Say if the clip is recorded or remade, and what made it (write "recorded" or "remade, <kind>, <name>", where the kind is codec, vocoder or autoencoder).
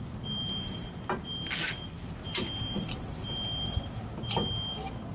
recorded